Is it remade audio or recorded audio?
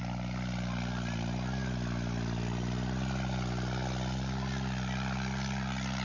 recorded